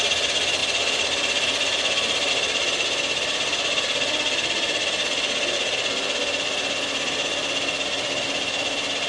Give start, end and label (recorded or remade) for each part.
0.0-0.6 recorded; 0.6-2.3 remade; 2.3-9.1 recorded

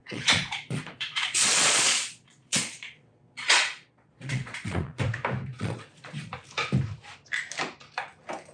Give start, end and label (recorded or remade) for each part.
0.0-5.0 remade; 5.0-5.5 recorded; 5.5-6.3 remade; 6.3-8.5 recorded

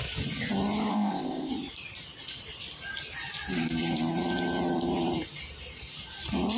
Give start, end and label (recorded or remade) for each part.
0.0-0.9 recorded; 0.9-1.5 remade; 1.5-6.6 recorded